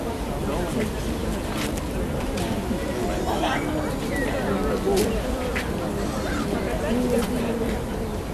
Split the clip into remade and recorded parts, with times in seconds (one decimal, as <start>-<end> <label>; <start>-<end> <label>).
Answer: 0.0-8.3 recorded

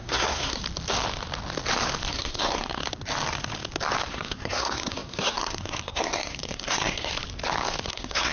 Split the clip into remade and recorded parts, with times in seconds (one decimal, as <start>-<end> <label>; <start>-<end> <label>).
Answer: 0.0-0.6 remade; 0.6-2.1 recorded; 2.1-2.8 remade; 2.8-4.1 recorded; 4.1-7.1 remade; 7.1-7.9 recorded; 7.9-8.3 remade

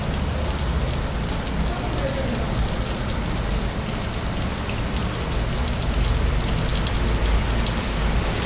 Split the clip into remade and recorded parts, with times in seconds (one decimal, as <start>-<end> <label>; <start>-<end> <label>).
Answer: 0.0-8.5 recorded

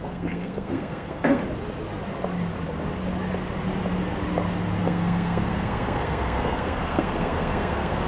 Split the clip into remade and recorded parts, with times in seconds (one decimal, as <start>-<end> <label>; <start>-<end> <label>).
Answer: 0.0-1.4 remade; 1.4-4.8 recorded; 4.8-8.1 remade

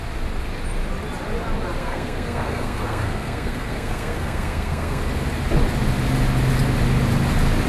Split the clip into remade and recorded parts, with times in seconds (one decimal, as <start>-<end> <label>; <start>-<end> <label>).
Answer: 0.0-1.8 recorded; 1.8-5.0 remade; 5.0-7.7 recorded

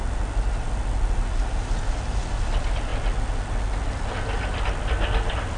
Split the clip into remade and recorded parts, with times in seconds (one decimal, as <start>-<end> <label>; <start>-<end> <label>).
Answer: 0.0-5.6 recorded